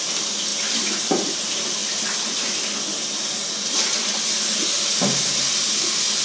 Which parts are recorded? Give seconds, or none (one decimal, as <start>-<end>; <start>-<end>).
0.5-1.3; 1.8-5.5